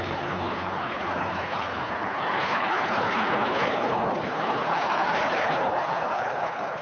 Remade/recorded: remade